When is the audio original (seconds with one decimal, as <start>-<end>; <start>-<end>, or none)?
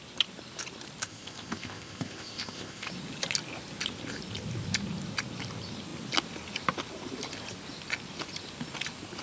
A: 0.0-1.0; 2.9-9.2